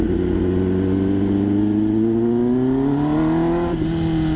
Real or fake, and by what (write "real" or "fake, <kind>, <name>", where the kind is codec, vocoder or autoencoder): real